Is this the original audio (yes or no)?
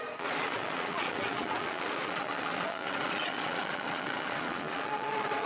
no